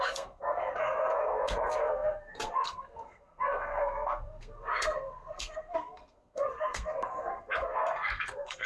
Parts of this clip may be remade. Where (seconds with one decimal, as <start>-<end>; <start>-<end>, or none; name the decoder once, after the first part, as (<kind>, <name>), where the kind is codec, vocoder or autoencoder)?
0.0-8.7 (codec, SNAC)